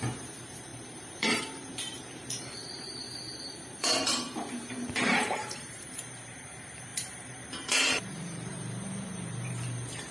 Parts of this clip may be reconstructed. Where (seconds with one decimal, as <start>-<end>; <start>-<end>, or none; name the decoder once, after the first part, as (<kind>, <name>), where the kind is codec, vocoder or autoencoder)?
0.0-10.1 (vocoder, BigVGAN v2)